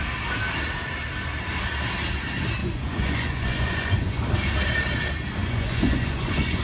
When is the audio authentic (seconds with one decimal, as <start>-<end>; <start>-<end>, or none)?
0.0-2.6; 4.2-5.4